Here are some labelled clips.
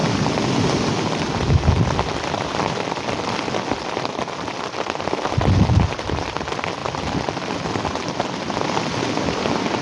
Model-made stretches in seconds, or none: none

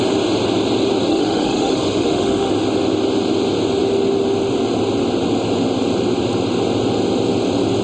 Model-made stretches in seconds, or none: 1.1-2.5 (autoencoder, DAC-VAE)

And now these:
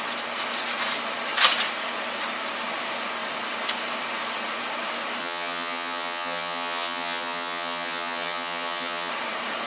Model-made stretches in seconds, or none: 5.2-9.1 (vocoder, HiFi-GAN)

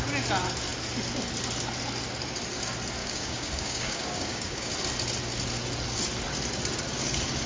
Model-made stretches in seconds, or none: 3.0-4.7 (codec, DAC)

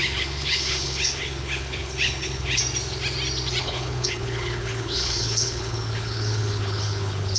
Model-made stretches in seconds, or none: 0.0-2.6 (codec, HILCodec); 3.6-7.4